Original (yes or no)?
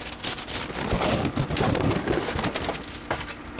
yes